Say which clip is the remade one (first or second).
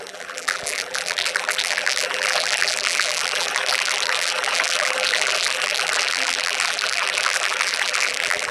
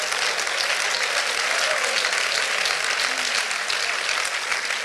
first